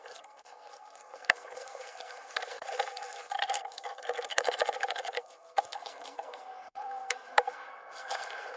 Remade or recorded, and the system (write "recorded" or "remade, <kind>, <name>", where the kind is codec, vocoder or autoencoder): remade, codec, SNAC